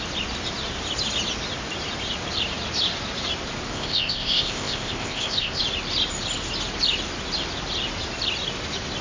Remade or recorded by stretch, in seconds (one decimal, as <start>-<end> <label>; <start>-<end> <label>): 0.0-3.7 recorded; 3.7-5.6 remade; 5.6-9.0 recorded